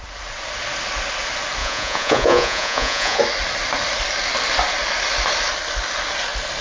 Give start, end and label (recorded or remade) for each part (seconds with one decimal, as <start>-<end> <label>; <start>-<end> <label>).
0.0-1.6 recorded; 1.6-3.2 remade; 3.2-6.6 recorded